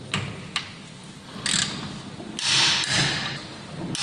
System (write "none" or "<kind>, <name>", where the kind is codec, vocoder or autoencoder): none